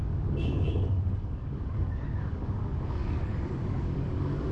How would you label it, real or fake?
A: fake